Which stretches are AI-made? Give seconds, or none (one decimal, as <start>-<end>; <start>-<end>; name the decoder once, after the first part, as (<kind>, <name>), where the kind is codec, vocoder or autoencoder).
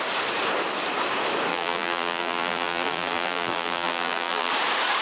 1.5-4.5 (vocoder, BigVGAN v2)